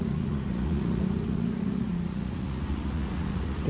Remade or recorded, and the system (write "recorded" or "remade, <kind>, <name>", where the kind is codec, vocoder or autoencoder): remade, vocoder, Vocos